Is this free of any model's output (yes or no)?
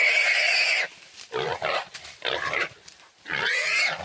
no